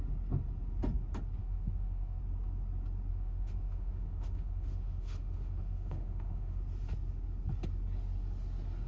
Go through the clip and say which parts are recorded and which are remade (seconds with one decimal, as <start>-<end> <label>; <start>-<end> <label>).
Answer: 0.0-1.4 recorded; 1.4-2.2 remade; 2.2-3.1 recorded; 3.1-6.6 remade; 6.6-8.9 recorded